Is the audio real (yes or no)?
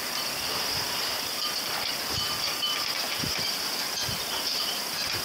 yes